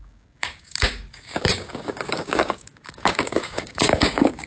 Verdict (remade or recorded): remade